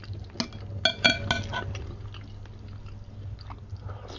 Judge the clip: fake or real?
real